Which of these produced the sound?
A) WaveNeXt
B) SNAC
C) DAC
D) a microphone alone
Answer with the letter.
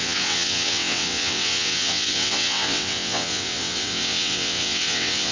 A